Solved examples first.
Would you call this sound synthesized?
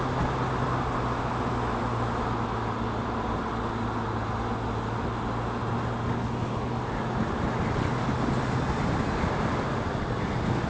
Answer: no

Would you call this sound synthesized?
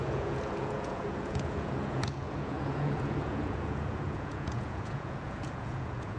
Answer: yes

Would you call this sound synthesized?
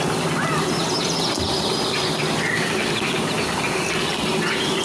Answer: no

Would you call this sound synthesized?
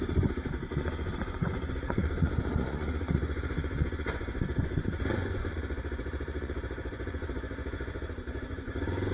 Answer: yes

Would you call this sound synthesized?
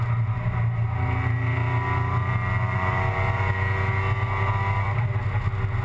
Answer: no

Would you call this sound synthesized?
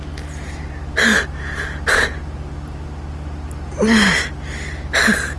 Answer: no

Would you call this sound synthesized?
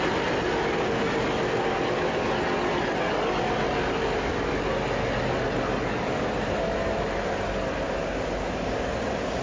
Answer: no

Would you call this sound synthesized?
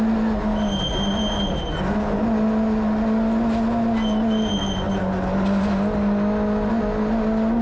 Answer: no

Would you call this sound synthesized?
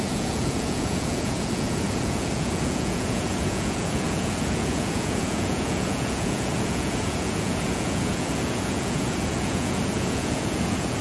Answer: yes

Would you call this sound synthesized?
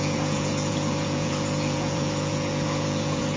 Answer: yes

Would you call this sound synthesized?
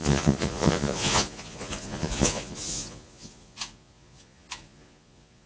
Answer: yes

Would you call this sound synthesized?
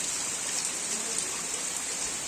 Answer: no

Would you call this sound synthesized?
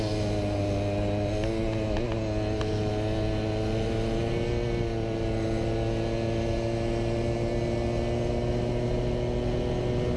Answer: no